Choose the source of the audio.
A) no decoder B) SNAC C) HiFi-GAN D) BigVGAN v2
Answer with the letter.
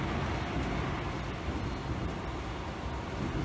A